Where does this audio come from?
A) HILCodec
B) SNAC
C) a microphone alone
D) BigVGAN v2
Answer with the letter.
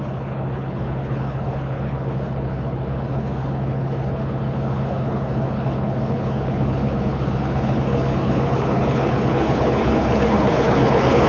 A